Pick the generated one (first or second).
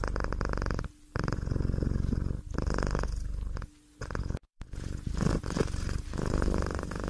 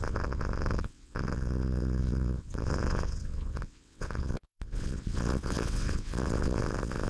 second